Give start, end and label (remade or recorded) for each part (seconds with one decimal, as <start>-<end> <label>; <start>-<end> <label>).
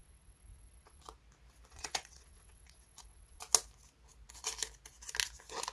0.0-1.0 remade; 1.0-1.7 recorded; 1.7-3.4 remade; 3.4-5.7 recorded